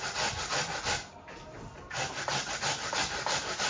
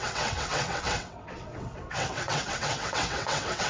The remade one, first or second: second